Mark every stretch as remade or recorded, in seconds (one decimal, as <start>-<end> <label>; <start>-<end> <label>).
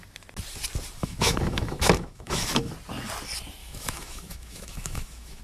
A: 0.0-1.0 recorded; 1.0-2.7 remade; 2.7-3.6 recorded; 3.6-5.4 remade